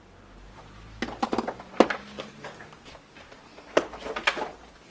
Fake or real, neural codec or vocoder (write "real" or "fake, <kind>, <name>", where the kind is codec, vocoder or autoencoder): real